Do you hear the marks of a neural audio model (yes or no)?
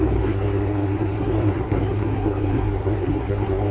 yes